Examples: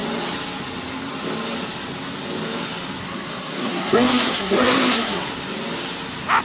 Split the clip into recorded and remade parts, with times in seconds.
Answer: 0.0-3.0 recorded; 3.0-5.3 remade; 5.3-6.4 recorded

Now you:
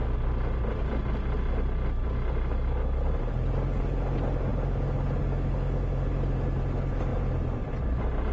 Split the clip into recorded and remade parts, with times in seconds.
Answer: 0.0-8.3 recorded

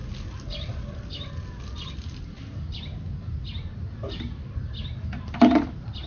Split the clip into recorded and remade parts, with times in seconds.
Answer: 0.0-6.1 recorded